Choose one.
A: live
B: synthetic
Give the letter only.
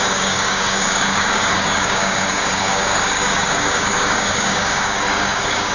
B